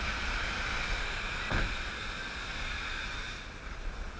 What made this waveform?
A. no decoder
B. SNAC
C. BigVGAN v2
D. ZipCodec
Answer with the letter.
A